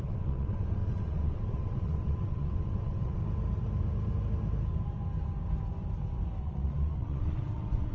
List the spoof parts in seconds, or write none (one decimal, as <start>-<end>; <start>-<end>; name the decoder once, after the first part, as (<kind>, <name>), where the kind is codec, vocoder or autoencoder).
0.0-3.2 (vocoder, WaveNeXt); 6.4-7.9

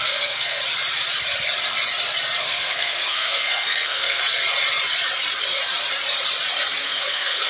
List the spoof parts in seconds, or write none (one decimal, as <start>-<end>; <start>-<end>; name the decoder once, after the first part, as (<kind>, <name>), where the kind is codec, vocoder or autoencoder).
0.0-0.6 (codec, SNAC); 2.4-4.2; 6.8-7.5

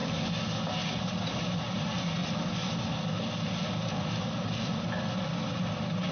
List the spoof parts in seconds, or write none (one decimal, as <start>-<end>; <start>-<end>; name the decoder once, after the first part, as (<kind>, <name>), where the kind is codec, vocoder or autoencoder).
none

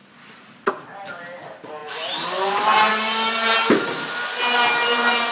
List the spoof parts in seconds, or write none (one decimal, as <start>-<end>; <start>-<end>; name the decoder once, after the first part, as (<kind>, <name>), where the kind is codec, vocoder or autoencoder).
none